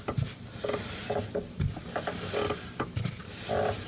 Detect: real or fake real